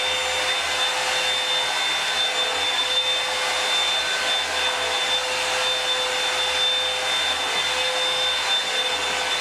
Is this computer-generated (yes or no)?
no